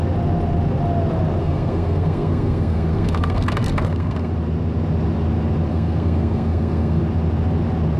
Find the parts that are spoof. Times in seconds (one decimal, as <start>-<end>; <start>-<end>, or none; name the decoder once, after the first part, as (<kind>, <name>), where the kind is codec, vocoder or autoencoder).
1.4-4.3 (codec, SNAC); 5.7-7.0